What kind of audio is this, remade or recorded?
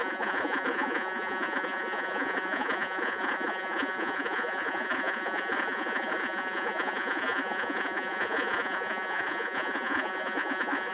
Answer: remade